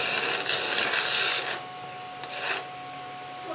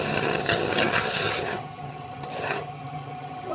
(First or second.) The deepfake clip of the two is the second